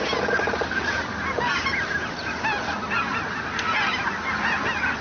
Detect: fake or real real